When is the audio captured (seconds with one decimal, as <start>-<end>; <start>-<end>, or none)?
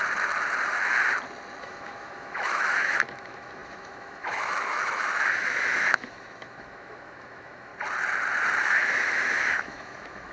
0.0-1.6; 7.7-8.6